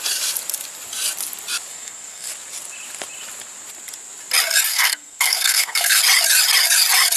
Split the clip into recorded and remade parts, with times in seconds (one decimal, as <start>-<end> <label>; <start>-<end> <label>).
0.0-1.7 recorded; 1.7-2.3 remade; 2.3-4.7 recorded; 4.7-6.0 remade; 6.0-7.2 recorded